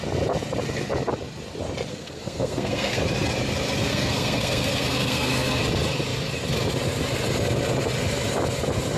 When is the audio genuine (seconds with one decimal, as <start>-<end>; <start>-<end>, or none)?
0.0-1.9; 3.0-3.8; 5.6-9.0